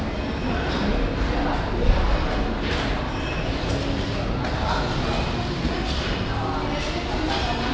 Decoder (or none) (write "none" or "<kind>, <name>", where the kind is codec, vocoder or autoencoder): none